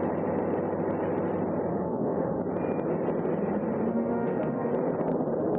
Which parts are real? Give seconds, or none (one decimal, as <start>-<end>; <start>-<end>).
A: 0.0-1.7; 2.4-3.9; 4.7-5.6

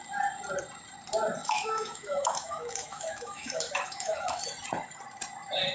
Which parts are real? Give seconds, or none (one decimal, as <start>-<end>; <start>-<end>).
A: 0.0-1.4; 4.4-5.7

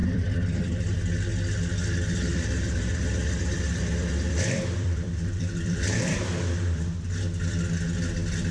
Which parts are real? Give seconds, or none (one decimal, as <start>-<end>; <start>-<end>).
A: 1.3-2.3; 6.3-8.5

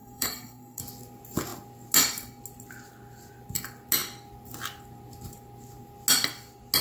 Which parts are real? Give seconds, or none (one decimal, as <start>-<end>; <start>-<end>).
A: 0.8-6.8

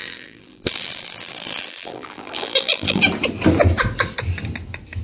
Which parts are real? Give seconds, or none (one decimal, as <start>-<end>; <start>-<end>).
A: 3.0-5.0

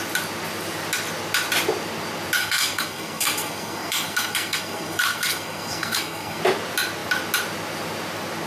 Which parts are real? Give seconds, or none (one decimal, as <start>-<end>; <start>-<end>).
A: 0.0-2.4; 6.4-8.5

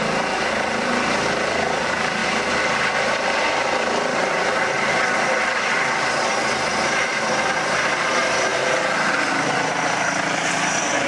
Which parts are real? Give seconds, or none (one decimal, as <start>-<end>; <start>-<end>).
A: 2.2-3.5; 6.3-7.1; 8.5-9.5

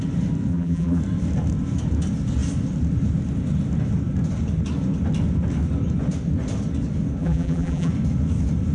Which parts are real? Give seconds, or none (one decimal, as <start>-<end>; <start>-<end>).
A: 0.0-0.5; 1.0-7.2; 7.9-8.7